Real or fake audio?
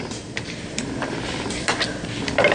fake